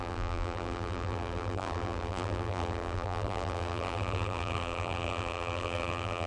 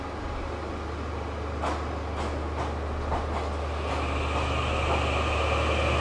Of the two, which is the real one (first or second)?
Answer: second